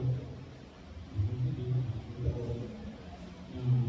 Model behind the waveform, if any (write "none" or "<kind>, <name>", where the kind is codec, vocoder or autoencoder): none